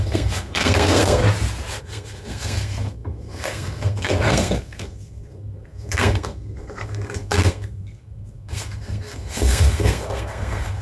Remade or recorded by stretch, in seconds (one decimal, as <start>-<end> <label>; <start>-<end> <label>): 0.0-1.2 remade; 1.2-1.8 recorded; 1.8-10.8 remade